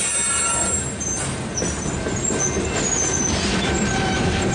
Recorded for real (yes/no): yes